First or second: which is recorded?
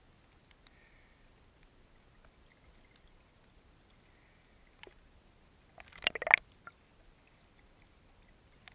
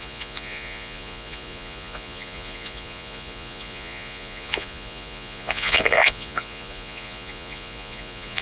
first